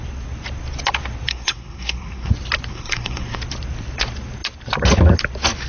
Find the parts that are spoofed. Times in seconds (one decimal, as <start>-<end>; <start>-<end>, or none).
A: 1.3-2.3; 2.7-3.4